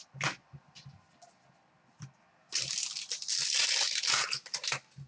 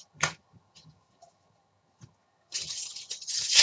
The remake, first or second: second